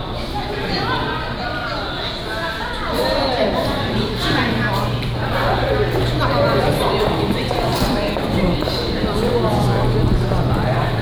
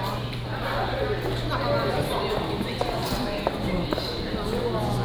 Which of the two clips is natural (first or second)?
second